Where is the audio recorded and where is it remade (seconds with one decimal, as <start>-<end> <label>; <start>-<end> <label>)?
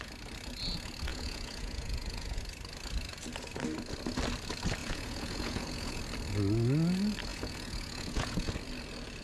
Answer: 0.0-1.1 recorded; 1.1-2.4 remade; 2.4-4.8 recorded; 4.8-6.0 remade; 6.0-7.3 recorded; 7.3-8.5 remade; 8.5-9.2 recorded